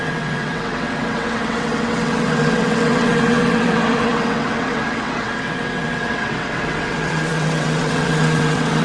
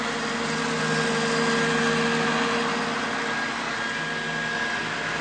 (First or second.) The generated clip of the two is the first